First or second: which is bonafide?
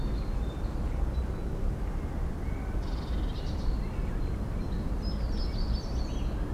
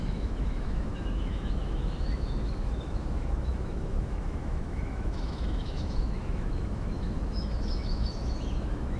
first